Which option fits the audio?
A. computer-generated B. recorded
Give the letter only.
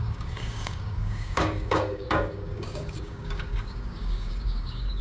A